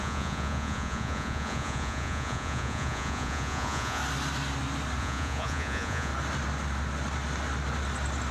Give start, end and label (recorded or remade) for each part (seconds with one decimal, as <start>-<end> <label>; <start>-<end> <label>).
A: 0.0-4.0 remade; 4.0-5.0 recorded; 5.0-6.1 remade; 6.1-8.3 recorded